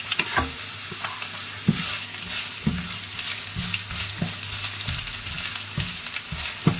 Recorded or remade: recorded